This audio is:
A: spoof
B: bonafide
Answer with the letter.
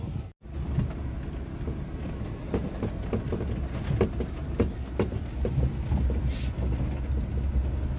B